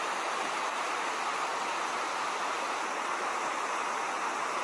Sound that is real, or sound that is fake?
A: real